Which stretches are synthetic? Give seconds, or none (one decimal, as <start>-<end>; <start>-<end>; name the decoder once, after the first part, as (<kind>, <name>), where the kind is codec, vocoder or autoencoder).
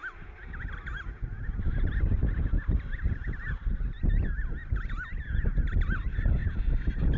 0.0-1.4 (vocoder, BigVGAN v2); 4.6-6.0; 6.4-7.2